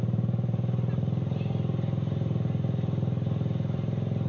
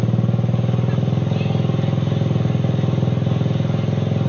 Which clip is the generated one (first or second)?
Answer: first